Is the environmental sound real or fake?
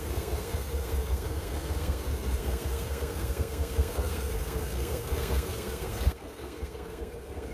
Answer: fake